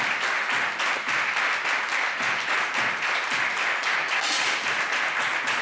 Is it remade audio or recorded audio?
recorded